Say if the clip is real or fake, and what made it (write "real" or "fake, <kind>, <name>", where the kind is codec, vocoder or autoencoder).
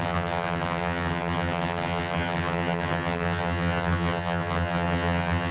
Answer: fake, vocoder, HiFi-GAN